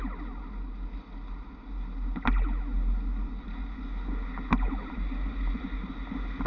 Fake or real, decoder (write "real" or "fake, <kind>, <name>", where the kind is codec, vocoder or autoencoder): real